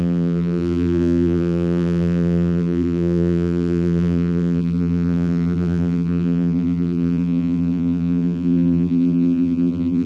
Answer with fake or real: fake